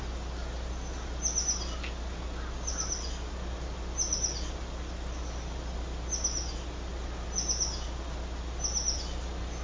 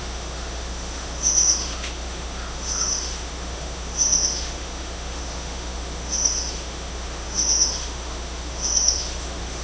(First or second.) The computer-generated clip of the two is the second